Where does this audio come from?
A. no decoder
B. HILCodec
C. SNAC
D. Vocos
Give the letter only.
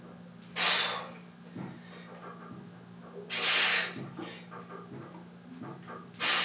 A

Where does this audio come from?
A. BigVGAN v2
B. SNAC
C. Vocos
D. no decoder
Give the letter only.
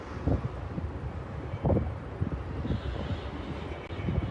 D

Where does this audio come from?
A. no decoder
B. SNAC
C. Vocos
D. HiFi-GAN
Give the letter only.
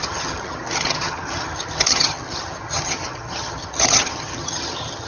D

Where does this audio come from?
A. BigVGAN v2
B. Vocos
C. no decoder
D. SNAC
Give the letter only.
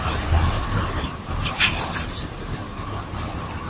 A